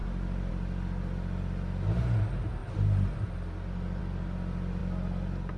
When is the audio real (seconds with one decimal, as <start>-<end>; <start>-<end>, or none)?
0.0-5.6